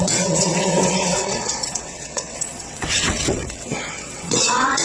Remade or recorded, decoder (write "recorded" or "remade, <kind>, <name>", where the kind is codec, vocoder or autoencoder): remade, vocoder, WaveNeXt